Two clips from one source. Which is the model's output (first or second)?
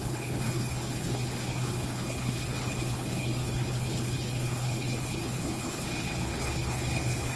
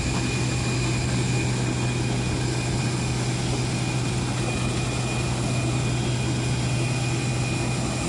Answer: first